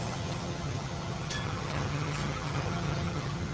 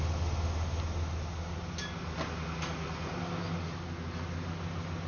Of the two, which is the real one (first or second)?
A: second